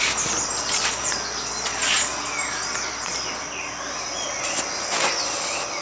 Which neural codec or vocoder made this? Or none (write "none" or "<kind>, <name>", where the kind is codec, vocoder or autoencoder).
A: none